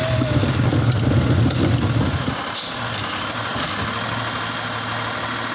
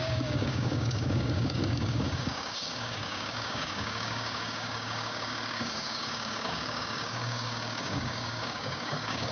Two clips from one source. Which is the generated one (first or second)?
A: second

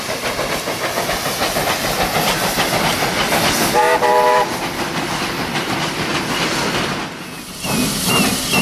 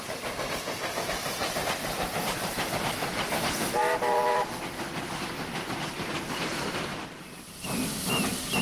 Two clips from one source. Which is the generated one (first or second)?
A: second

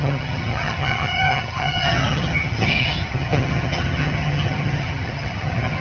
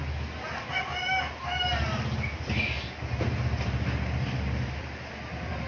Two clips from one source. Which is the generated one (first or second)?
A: first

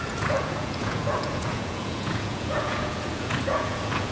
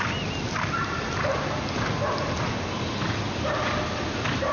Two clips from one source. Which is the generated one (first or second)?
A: first